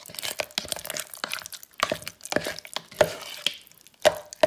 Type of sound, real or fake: real